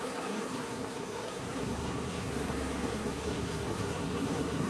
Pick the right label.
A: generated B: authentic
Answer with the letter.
A